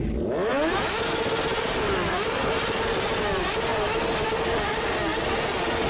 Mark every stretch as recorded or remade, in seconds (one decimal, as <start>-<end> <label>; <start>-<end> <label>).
0.0-5.9 recorded